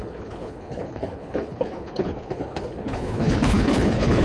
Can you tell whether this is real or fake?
fake